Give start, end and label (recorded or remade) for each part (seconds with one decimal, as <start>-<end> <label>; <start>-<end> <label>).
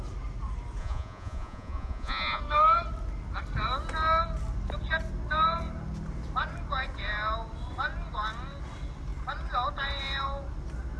0.0-0.8 recorded; 0.8-2.4 remade; 2.4-11.0 recorded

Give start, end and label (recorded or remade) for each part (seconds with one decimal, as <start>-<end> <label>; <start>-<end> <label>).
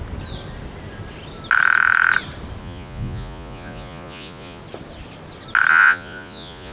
0.0-2.6 recorded; 2.6-4.6 remade; 4.6-5.7 recorded; 5.7-6.7 remade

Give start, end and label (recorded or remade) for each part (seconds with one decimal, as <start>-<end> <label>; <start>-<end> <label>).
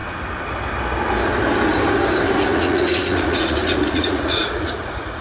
0.0-2.5 recorded; 2.5-5.2 remade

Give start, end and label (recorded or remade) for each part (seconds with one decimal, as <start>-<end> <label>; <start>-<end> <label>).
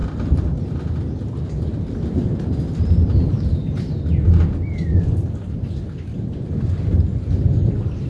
0.0-6.1 recorded; 6.1-8.1 remade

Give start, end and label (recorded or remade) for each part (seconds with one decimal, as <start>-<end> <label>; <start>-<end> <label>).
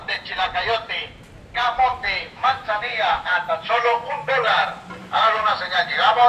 0.0-1.9 recorded; 1.9-4.3 remade; 4.3-5.0 recorded; 5.0-5.6 remade; 5.6-6.3 recorded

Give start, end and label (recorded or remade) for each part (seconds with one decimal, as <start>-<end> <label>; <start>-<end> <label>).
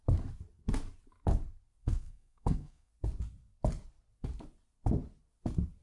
0.0-1.8 recorded; 1.8-2.9 remade; 2.9-5.8 recorded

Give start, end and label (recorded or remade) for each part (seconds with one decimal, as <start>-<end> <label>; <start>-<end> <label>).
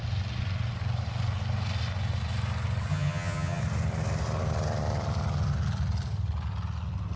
0.0-2.9 recorded; 2.9-3.6 remade; 3.6-7.2 recorded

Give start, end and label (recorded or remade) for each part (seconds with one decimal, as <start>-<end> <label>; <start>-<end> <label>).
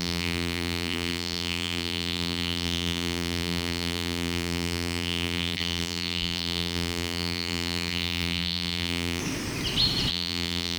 0.0-9.2 remade; 9.2-10.1 recorded; 10.1-10.8 remade